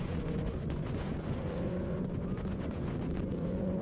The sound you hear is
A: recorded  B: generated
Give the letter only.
B